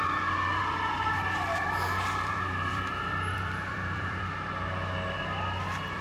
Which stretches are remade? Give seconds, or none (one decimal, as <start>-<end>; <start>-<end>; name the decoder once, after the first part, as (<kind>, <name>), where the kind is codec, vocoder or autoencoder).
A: 0.6-4.2 (vocoder, BigVGAN v2)